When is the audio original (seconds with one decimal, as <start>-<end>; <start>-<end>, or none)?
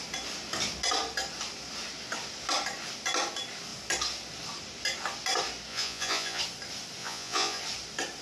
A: 0.0-5.7; 6.4-7.0; 7.6-8.2